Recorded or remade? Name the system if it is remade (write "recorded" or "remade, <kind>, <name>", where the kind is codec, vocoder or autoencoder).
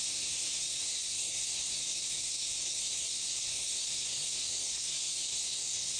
remade, codec, SNAC